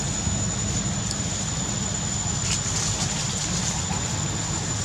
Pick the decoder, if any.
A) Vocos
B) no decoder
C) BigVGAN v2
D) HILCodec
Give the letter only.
C